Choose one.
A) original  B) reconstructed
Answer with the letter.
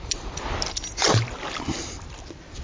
A